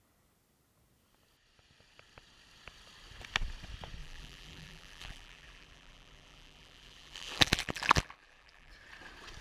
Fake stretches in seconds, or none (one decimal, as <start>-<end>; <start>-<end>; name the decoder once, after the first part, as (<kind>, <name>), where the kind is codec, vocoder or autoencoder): 4.0-8.7 (vocoder, BigVGAN v2)